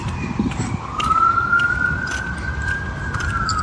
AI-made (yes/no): no